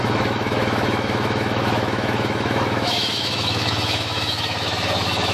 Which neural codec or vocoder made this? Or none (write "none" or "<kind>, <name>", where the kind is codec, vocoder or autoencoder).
autoencoder, DAC-VAE